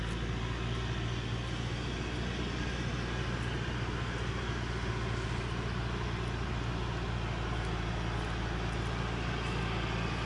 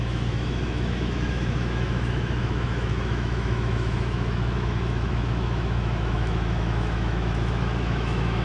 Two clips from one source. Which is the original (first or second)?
first